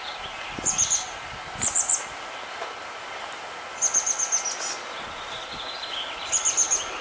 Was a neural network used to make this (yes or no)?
no